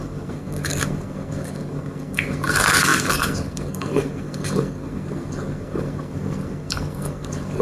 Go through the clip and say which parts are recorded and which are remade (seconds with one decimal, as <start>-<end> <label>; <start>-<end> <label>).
0.0-7.6 remade

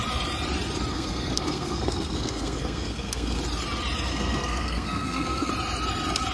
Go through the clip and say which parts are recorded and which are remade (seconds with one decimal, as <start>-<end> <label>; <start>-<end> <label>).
0.0-0.9 recorded; 0.9-3.4 remade; 3.4-4.1 recorded; 4.1-5.5 remade; 5.5-6.3 recorded

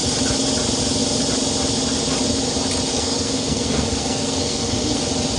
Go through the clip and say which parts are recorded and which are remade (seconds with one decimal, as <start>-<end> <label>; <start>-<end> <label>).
0.0-2.9 recorded; 2.9-5.0 remade; 5.0-5.4 recorded